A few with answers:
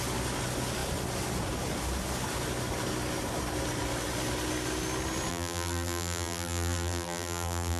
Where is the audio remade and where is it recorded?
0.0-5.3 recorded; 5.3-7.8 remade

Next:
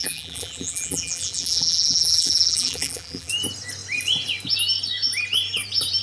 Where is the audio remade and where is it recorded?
0.0-3.3 remade; 3.3-6.0 recorded

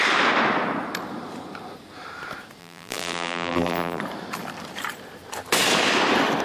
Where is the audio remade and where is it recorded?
0.0-2.6 recorded; 2.6-4.0 remade; 4.0-6.4 recorded

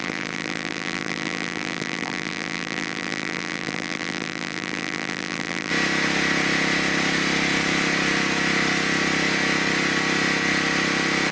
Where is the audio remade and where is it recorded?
0.0-5.7 remade; 5.7-11.3 recorded

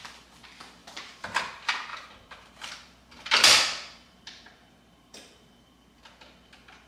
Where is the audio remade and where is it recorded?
0.0-0.8 recorded; 0.8-1.4 remade; 1.4-1.9 recorded; 1.9-6.0 remade; 6.0-6.9 recorded

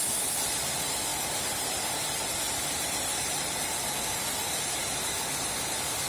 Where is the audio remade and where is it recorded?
0.0-1.1 recorded; 1.1-4.8 remade; 4.8-6.1 recorded

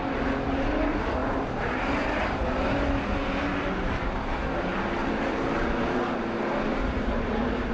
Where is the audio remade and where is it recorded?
0.0-5.0 recorded; 5.0-6.0 remade; 6.0-6.7 recorded; 6.7-7.7 remade

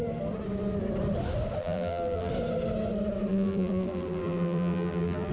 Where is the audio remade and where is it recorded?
0.0-1.6 recorded; 1.6-2.3 remade; 2.3-3.3 recorded; 3.3-5.3 remade